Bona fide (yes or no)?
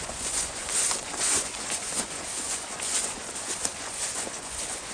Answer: no